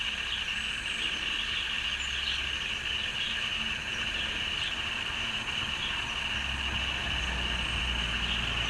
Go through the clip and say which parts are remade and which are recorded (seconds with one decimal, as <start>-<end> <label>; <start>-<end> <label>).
0.0-3.1 recorded; 3.1-5.8 remade; 5.8-8.7 recorded